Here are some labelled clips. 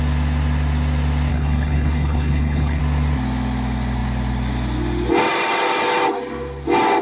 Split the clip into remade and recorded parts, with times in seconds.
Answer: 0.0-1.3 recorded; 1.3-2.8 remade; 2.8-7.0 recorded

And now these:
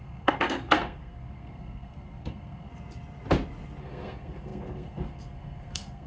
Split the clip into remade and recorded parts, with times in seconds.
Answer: 0.0-2.7 remade; 2.7-3.8 recorded; 3.8-6.1 remade

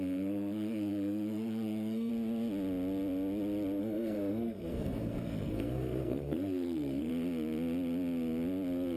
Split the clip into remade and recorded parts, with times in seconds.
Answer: 0.0-2.1 remade; 2.1-3.8 recorded; 3.8-7.1 remade; 7.1-9.0 recorded

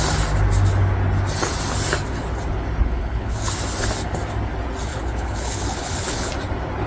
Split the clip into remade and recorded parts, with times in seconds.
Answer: 0.0-2.8 recorded; 2.8-3.6 remade; 3.6-4.9 recorded; 4.9-6.3 remade; 6.3-6.9 recorded

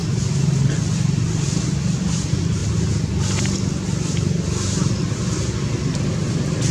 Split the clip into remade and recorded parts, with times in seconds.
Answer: 0.0-6.7 recorded

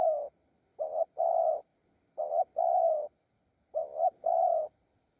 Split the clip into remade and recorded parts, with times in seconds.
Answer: 0.0-5.2 recorded